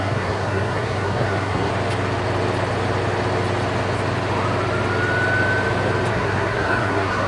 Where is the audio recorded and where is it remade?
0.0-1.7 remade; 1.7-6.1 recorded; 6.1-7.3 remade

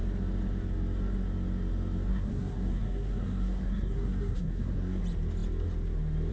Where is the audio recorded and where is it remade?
0.0-2.1 recorded; 2.1-5.0 remade; 5.0-6.3 recorded

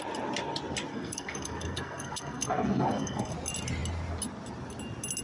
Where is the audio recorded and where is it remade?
0.0-0.9 recorded; 0.9-3.3 remade; 3.3-5.2 recorded

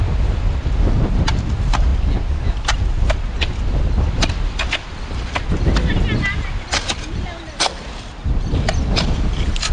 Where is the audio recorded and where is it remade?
0.0-9.7 recorded